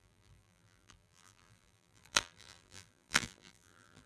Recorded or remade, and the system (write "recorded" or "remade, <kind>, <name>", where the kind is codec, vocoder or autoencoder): remade, vocoder, BigVGAN v2